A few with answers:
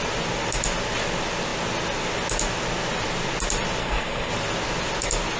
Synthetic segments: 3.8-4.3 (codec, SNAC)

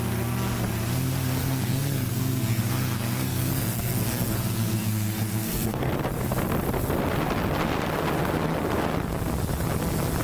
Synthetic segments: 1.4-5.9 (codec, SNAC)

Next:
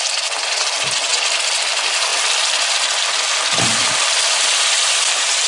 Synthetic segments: none

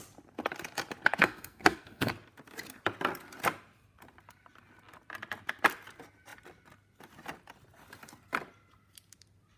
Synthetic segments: 1.2-2.1 (codec, SNAC)

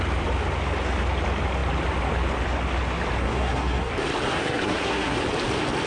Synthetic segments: 3.2-3.9 (codec, SNAC); 4.3-5.2

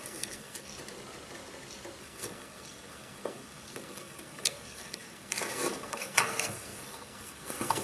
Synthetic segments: 0.0-0.7 (codec, SNAC); 2.0-7.8

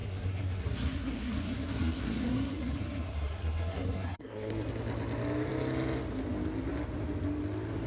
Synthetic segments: 0.0-4.7 (codec, SNAC)